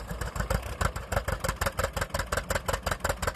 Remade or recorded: recorded